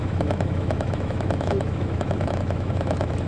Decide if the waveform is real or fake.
fake